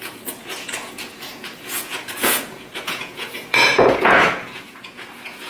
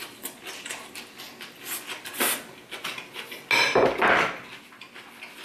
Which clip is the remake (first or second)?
first